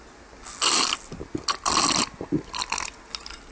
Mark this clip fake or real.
real